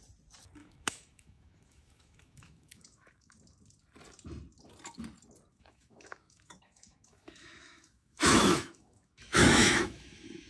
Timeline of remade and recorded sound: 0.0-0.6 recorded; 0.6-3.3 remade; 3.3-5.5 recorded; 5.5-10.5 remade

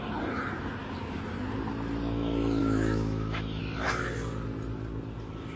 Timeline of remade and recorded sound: 0.0-2.6 recorded; 2.6-3.6 remade; 3.6-5.6 recorded

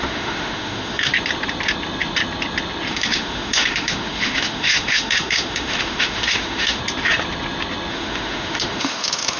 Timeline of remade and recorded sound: 0.0-1.1 remade; 1.1-2.9 recorded; 2.9-6.8 remade; 6.8-7.9 recorded; 7.9-9.4 remade

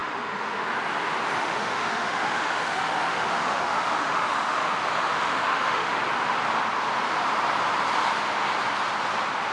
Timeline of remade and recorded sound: 0.0-0.6 remade; 0.6-1.4 recorded; 1.4-6.0 remade; 6.0-9.5 recorded

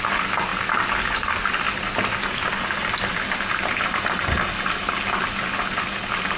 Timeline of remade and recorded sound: 0.0-6.4 recorded

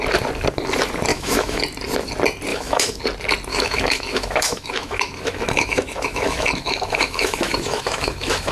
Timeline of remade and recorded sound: 0.0-1.1 recorded; 1.1-1.6 remade; 1.6-2.5 recorded; 2.5-3.0 remade; 3.0-3.5 recorded; 3.5-8.5 remade